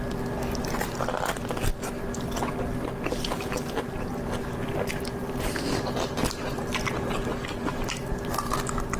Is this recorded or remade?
recorded